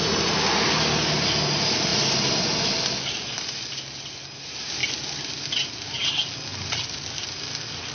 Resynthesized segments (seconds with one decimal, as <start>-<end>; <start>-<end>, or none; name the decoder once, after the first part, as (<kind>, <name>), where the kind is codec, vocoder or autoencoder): 4.8-5.3 (vocoder, BigVGAN v2); 6.5-7.9